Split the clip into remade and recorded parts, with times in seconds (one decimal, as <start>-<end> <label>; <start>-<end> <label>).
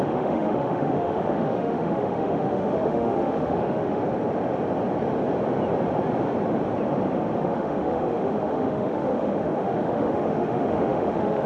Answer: 0.0-4.0 remade; 4.0-7.4 recorded; 7.4-11.5 remade